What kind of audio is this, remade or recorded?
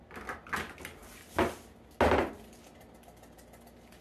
recorded